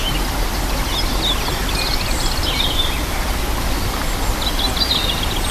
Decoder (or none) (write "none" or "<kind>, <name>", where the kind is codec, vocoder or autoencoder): none